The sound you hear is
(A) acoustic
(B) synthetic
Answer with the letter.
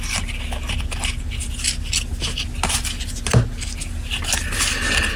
A